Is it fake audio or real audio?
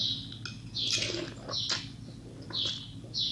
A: real